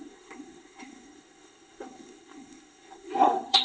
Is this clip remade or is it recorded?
remade